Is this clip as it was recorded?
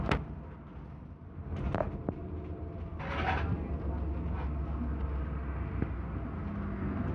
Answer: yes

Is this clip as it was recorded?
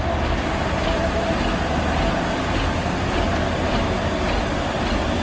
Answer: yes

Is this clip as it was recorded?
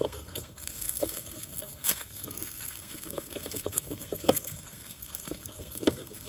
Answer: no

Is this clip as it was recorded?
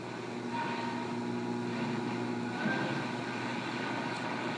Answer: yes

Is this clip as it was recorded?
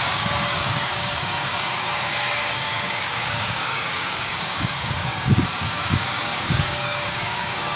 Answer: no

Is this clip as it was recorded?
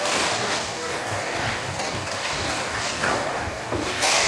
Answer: no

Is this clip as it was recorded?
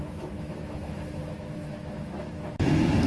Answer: no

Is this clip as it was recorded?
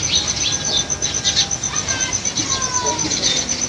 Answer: yes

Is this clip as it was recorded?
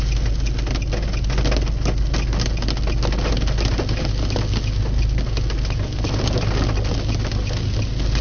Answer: yes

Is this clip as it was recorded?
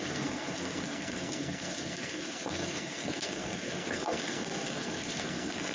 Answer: no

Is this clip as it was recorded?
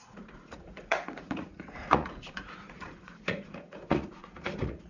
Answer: no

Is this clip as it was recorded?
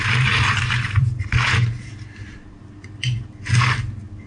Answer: no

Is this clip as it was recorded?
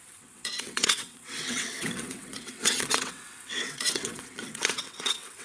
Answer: no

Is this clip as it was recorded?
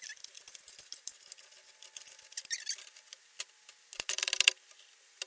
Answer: yes